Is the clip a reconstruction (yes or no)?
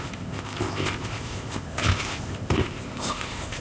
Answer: yes